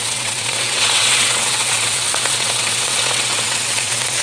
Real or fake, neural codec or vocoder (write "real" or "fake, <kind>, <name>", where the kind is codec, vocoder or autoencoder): fake, vocoder, WaveNeXt